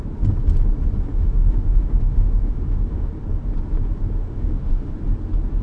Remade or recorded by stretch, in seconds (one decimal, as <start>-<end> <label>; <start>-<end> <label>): 0.0-1.1 recorded; 1.1-3.1 remade; 3.1-4.2 recorded; 4.2-4.9 remade; 4.9-5.6 recorded